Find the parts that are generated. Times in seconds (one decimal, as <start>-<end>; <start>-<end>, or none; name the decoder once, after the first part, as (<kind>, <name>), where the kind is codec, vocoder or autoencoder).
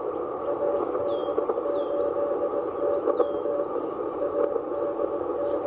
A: none